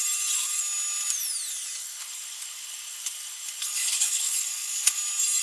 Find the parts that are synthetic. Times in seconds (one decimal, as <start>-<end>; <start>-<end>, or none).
1.8-5.0